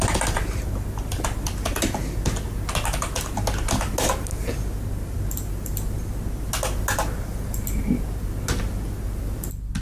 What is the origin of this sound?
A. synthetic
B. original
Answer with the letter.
B